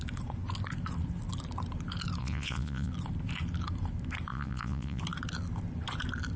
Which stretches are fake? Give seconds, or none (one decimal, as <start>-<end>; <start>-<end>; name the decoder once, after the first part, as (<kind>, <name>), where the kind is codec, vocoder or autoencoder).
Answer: 2.2-2.9 (vocoder, Vocos); 4.3-5.0